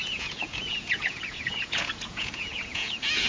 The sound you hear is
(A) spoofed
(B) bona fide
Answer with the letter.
A